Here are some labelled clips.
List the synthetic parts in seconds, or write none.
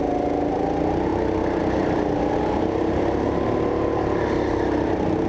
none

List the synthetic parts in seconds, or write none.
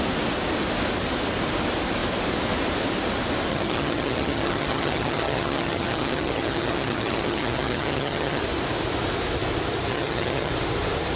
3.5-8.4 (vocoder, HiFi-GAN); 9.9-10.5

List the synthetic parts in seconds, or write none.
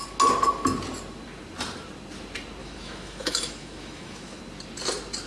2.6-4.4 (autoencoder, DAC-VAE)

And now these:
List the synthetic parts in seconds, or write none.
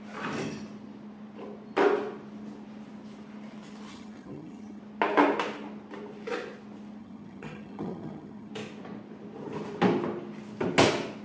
3.9-4.8 (vocoder, HiFi-GAN); 7.0-8.5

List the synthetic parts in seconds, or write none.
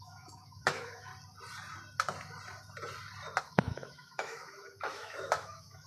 0.0-1.1 (autoencoder, DAC-VAE); 3.4-5.9